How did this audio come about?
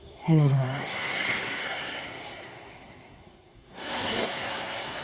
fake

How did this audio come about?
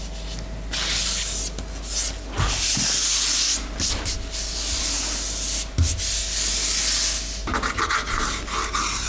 real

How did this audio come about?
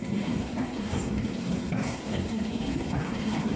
fake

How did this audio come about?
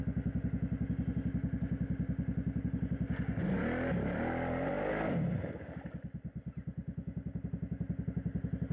real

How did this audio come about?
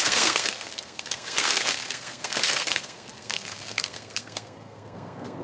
fake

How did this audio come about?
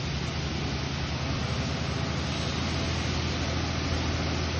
real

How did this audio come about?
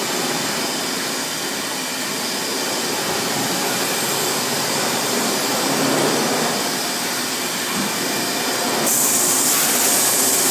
real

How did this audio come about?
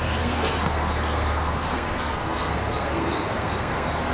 fake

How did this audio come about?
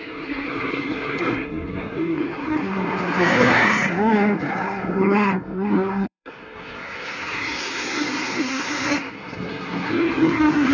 fake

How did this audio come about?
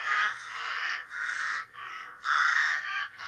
fake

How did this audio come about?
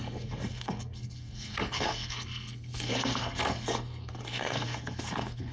fake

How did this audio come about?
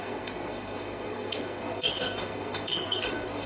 fake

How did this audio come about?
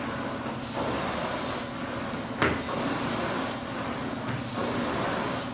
real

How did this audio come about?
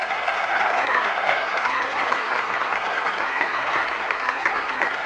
fake